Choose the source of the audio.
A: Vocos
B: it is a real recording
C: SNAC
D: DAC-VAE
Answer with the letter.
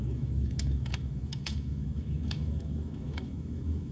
D